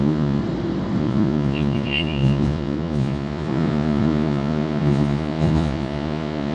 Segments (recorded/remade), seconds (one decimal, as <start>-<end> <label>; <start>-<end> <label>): 0.0-0.4 remade; 0.4-1.0 recorded; 1.0-6.5 remade